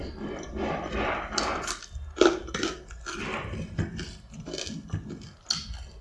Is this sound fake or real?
real